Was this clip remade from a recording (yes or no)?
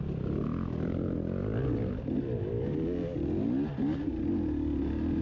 no